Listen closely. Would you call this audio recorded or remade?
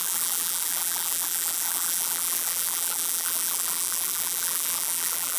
remade